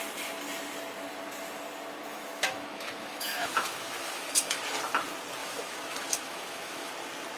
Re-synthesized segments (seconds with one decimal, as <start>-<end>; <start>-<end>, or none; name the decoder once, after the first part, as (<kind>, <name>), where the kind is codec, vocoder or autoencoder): 2.1-4.6 (autoencoder, DAC-VAE); 5.4-6.9